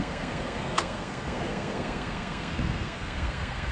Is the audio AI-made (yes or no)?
yes